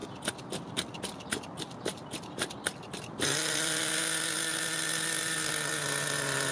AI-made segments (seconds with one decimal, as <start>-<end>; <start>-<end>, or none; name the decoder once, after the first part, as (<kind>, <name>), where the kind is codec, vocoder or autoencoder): 0.0-3.9 (vocoder, BigVGAN v2)